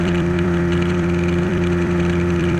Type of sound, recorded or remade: remade